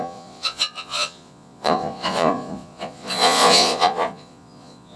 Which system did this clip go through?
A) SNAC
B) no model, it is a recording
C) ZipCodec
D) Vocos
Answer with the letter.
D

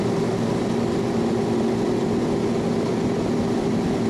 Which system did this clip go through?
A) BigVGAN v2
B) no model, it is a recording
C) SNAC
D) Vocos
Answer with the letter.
B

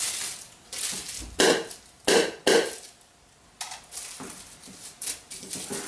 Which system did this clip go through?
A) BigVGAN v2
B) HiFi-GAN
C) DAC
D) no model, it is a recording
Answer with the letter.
D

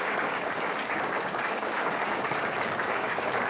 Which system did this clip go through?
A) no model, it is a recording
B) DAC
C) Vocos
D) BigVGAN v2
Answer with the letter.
B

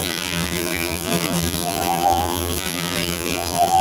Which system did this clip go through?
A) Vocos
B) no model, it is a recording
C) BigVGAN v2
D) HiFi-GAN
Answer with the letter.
C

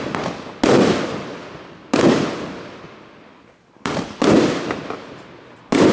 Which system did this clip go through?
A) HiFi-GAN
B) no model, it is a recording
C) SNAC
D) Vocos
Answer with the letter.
B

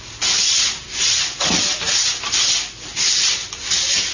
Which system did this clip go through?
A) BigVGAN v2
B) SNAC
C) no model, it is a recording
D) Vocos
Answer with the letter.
C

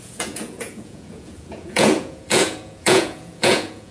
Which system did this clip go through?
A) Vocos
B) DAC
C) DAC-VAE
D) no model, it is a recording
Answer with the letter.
A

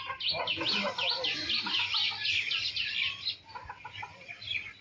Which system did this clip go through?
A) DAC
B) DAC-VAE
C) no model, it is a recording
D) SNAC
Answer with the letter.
C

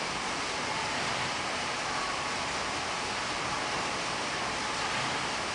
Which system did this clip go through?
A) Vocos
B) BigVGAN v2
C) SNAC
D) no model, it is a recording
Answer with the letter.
D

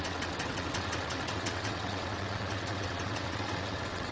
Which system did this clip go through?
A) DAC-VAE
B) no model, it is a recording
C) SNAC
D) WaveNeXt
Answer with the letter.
D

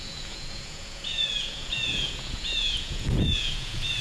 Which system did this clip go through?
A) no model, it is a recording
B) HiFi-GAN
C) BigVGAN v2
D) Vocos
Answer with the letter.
D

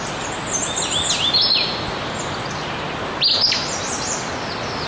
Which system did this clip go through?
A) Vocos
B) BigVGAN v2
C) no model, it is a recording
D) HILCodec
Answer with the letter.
C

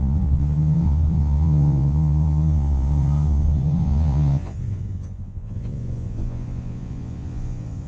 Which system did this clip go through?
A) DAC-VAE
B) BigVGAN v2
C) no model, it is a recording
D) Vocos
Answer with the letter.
D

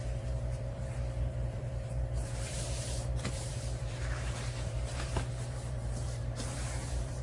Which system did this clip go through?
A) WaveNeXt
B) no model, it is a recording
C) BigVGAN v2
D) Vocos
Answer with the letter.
C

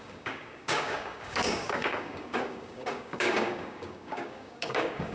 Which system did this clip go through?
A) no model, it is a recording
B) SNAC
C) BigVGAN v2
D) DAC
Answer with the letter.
D